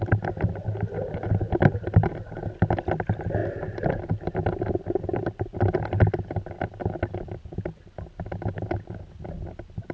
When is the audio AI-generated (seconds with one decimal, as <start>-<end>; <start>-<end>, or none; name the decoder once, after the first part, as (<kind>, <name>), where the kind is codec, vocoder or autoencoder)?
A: none